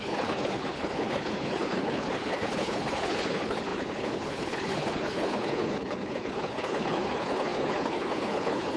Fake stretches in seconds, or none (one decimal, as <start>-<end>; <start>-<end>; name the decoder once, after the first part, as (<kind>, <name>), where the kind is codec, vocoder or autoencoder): 0.0-8.8 (codec, HILCodec)